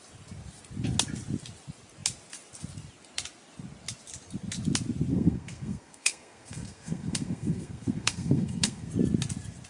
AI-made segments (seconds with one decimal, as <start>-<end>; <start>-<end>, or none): 5.1-8.9